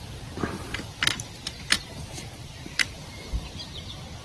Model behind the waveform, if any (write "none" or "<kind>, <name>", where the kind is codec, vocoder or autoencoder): vocoder, BigVGAN v2